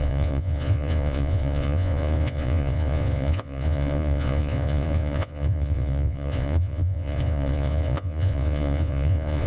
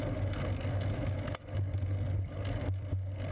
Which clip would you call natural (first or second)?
second